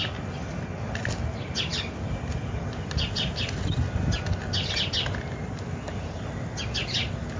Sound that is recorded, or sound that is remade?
recorded